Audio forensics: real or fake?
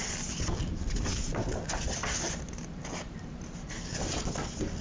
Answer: real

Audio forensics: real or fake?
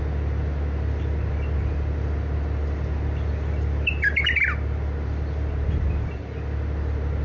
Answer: real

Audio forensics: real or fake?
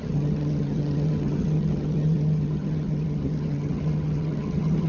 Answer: fake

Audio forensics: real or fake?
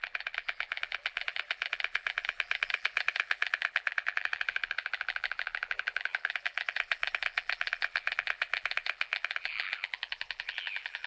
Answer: fake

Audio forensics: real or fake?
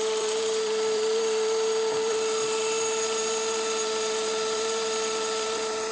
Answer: fake